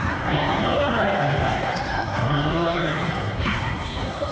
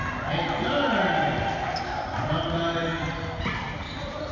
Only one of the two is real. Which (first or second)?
second